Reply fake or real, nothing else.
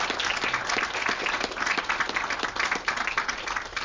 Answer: real